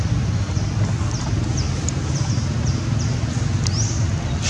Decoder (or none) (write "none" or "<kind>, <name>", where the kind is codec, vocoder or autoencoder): none